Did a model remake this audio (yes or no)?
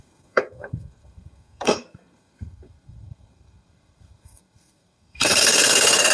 yes